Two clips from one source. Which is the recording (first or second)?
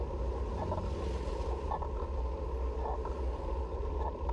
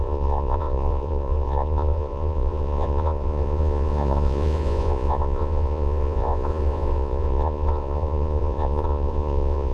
first